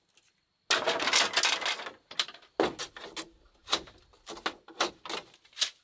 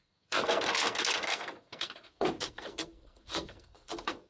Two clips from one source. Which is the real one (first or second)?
first